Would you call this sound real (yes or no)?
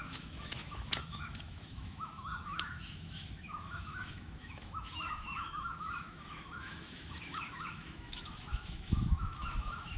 no